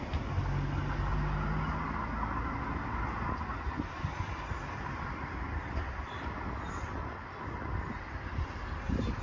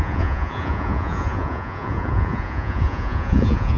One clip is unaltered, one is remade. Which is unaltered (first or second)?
first